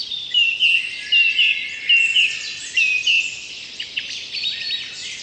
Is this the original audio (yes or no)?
yes